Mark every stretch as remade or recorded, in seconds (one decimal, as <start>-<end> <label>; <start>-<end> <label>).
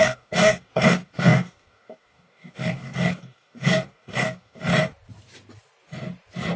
0.0-4.7 remade; 4.7-6.6 recorded